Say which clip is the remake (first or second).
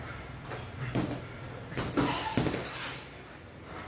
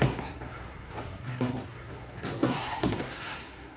second